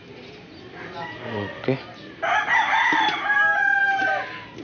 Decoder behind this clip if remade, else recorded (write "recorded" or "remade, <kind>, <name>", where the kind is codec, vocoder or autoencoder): recorded